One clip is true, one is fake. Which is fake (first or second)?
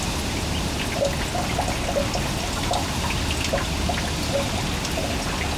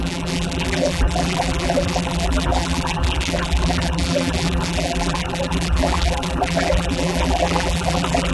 second